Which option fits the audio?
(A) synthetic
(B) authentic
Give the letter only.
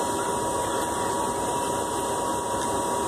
B